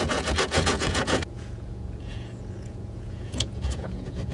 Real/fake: fake